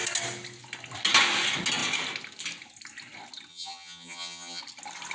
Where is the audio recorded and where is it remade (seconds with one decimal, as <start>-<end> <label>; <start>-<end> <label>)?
0.0-3.5 recorded; 3.5-4.6 remade; 4.6-5.1 recorded